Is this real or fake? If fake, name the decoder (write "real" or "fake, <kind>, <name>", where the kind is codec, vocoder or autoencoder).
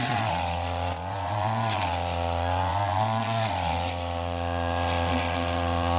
fake, vocoder, Vocos